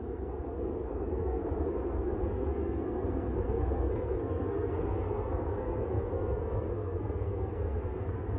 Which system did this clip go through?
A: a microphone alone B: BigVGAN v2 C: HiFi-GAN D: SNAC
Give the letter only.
D